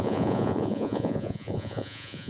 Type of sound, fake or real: fake